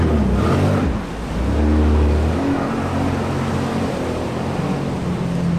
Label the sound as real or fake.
real